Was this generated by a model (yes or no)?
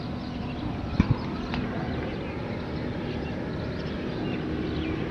no